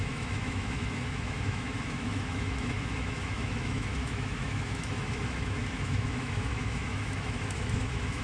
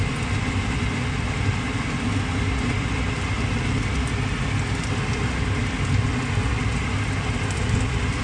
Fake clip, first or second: first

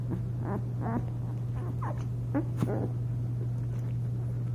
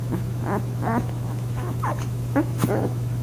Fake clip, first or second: second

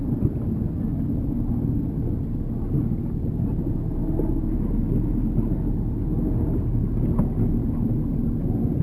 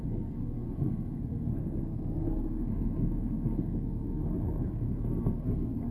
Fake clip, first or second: second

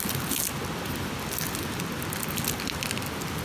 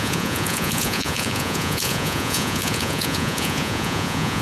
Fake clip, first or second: second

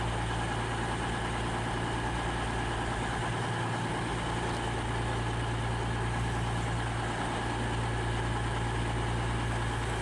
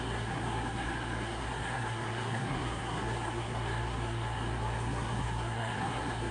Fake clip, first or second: second